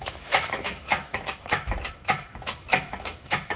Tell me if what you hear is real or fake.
fake